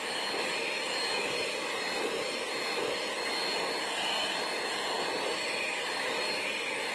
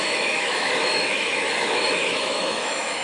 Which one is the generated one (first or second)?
second